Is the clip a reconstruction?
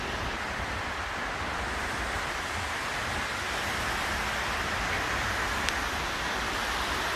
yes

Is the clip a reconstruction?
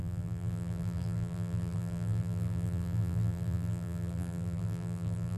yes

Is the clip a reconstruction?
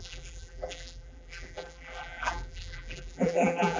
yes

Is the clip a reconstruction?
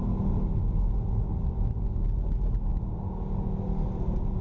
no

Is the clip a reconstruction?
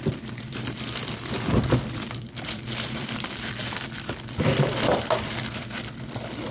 yes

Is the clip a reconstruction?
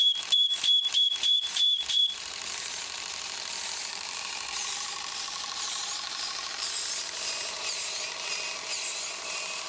yes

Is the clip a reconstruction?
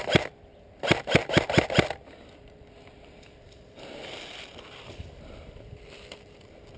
yes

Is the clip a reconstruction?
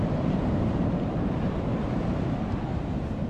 yes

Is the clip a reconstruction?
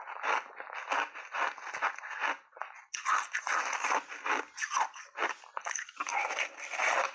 no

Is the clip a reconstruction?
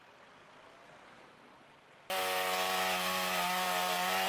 yes